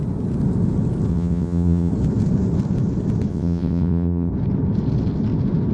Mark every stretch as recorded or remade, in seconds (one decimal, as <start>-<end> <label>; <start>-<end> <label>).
0.0-1.1 recorded; 1.1-1.9 remade; 1.9-3.3 recorded; 3.3-4.3 remade; 4.3-5.7 recorded